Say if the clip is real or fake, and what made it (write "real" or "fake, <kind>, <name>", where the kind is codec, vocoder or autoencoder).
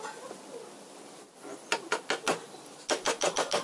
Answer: real